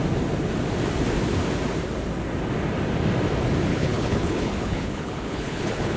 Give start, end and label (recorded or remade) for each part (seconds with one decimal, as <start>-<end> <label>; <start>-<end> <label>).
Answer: 0.0-3.7 recorded; 3.7-6.0 remade